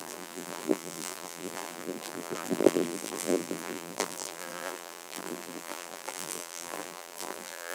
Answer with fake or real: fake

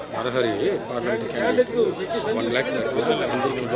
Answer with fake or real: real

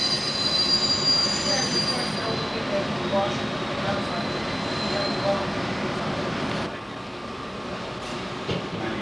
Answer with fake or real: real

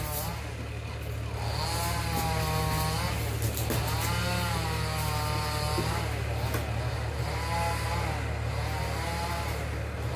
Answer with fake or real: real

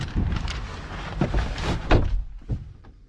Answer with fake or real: fake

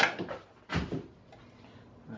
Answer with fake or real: real